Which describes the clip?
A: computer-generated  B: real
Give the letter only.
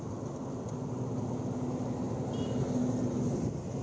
B